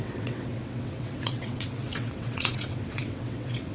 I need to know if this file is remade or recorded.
remade